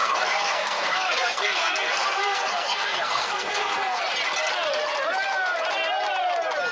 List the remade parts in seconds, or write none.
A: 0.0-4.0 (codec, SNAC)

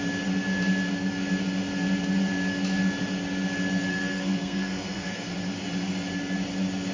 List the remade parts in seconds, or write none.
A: 3.9-5.3 (codec, SNAC)

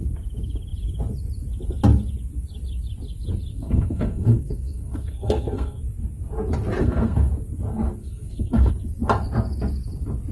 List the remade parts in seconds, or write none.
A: 3.5-5.8 (codec, SNAC); 6.8-7.3; 8.0-8.7

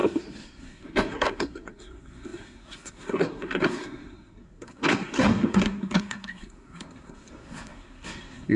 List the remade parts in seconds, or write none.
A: 0.0-8.6 (codec, SNAC)